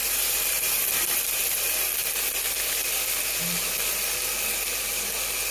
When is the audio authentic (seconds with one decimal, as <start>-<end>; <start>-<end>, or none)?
2.0-5.5